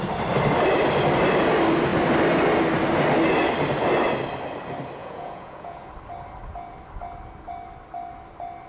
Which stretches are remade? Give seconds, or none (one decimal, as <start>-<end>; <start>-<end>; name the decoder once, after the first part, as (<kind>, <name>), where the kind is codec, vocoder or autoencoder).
5.0-5.9 (vocoder, Vocos)